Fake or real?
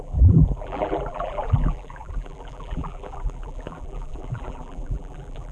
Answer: fake